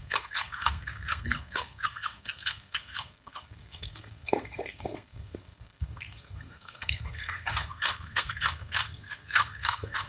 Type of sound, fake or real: fake